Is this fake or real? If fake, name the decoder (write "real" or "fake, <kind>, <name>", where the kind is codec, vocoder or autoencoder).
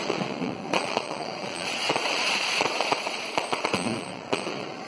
fake, vocoder, Vocos